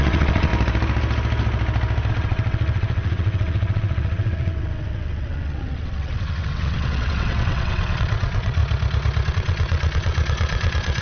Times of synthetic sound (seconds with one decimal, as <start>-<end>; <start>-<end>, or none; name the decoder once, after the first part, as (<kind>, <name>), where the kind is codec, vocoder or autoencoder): 0.0-0.5 (vocoder, WaveNeXt); 2.1-8.6; 9.3-11.0